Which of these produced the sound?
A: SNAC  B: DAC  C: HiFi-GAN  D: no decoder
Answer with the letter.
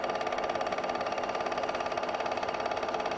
D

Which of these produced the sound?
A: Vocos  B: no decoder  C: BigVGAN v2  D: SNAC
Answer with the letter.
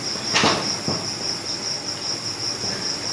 B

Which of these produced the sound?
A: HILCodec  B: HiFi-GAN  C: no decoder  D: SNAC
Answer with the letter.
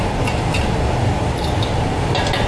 C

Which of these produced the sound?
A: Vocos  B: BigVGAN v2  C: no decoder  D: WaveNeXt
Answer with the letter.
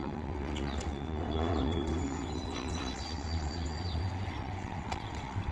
D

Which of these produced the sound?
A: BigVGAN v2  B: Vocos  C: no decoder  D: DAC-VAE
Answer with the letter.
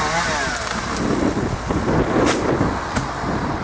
C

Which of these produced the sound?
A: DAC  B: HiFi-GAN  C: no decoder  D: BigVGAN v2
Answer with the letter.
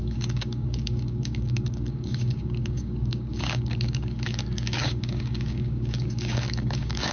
A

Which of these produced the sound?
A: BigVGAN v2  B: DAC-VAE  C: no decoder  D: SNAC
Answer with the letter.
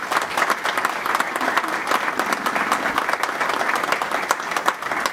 C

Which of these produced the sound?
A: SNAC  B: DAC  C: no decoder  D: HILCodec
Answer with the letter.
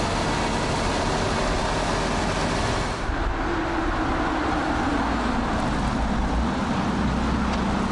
C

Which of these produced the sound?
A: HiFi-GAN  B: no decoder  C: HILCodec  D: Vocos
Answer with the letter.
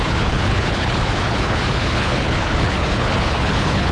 C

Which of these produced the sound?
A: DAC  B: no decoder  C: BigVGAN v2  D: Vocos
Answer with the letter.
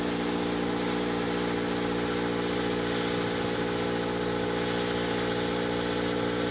B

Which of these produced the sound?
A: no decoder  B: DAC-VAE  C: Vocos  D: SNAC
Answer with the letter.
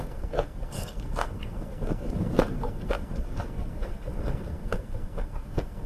D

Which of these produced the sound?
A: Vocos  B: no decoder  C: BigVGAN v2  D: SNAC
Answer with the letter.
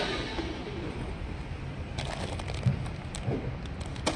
B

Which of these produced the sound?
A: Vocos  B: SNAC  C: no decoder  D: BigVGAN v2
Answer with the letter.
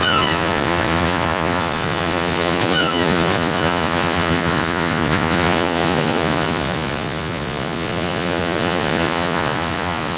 A